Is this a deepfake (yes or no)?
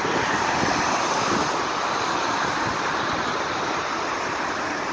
no